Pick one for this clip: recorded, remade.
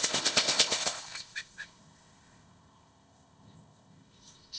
remade